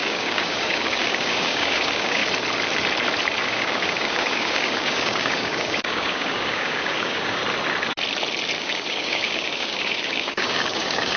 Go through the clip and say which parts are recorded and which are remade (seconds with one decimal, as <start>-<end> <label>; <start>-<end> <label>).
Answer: 0.0-2.2 remade; 2.2-3.4 recorded; 3.4-7.4 remade; 7.4-8.6 recorded; 8.6-11.2 remade